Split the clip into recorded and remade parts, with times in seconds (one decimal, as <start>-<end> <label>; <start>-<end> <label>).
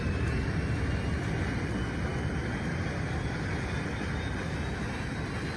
0.0-5.6 recorded